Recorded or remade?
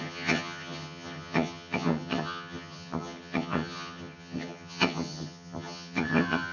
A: remade